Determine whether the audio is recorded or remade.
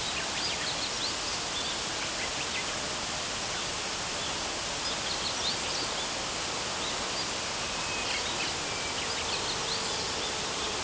recorded